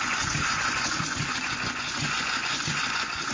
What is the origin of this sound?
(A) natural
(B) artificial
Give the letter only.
B